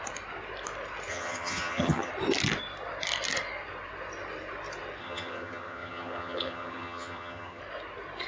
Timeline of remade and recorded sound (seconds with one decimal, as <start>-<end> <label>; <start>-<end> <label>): 0.0-1.1 recorded; 1.1-2.1 remade; 2.1-5.0 recorded; 5.0-7.6 remade; 7.6-8.3 recorded